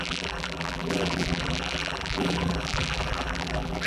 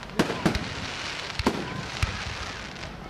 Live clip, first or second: second